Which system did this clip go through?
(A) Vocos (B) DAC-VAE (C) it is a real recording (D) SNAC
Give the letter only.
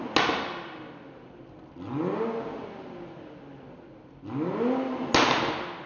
C